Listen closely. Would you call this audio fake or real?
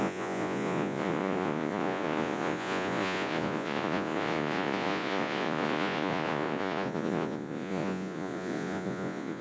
fake